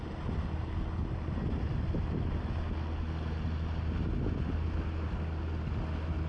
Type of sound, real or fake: real